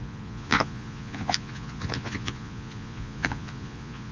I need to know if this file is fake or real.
fake